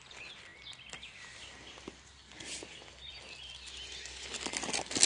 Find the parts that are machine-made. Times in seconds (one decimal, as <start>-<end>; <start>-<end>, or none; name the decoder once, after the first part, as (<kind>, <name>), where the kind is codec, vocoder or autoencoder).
none